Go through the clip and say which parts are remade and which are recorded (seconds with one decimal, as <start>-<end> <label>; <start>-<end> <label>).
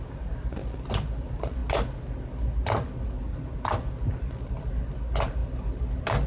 0.0-6.3 recorded